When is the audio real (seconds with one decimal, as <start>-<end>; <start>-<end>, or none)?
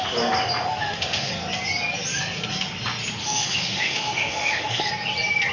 0.0-0.8; 1.3-3.2; 4.9-5.5